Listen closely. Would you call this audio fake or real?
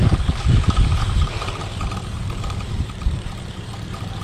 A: fake